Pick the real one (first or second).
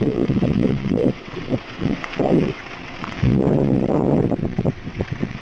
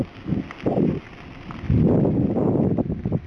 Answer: second